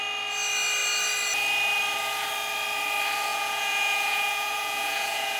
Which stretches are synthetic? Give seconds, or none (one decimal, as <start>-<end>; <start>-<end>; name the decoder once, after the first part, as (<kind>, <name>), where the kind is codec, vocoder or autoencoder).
3.3-5.4 (vocoder, Vocos)